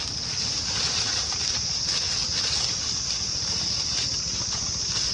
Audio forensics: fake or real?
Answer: real